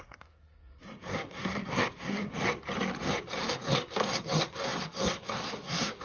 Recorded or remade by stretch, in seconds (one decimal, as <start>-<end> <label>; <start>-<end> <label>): 0.0-2.3 remade; 2.3-3.5 recorded; 3.5-6.0 remade

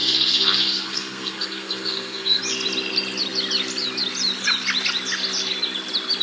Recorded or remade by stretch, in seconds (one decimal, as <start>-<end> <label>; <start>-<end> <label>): 0.0-2.4 remade; 2.4-6.2 recorded